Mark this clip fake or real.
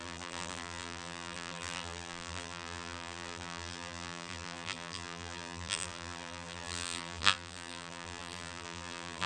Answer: fake